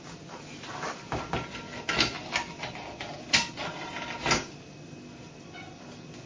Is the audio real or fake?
real